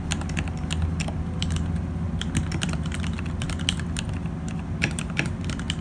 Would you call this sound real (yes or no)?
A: yes